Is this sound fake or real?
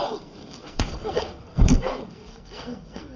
fake